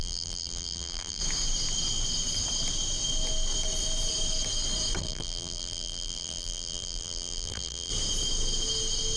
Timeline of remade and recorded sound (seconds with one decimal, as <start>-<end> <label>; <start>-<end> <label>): 0.0-1.2 remade; 1.2-5.0 recorded; 5.0-7.9 remade; 7.9-9.2 recorded